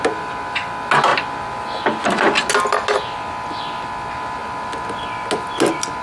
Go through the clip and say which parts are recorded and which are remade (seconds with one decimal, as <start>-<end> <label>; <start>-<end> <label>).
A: 0.0-6.0 recorded